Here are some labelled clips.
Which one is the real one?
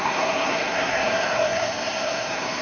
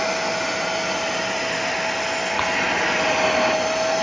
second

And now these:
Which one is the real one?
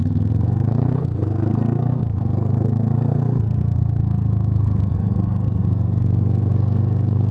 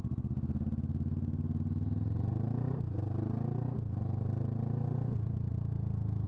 second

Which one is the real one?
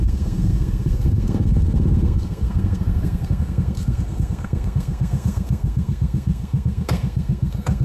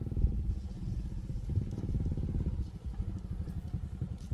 second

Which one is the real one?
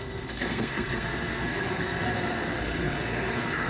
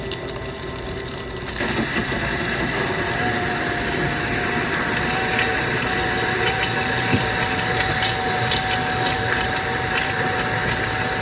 second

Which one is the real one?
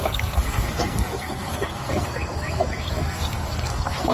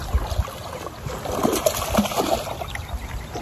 second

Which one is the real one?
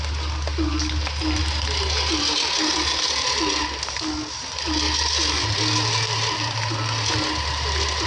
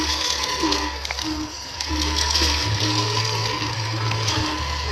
first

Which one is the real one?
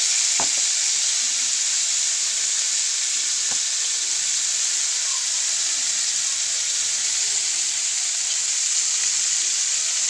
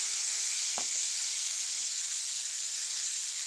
first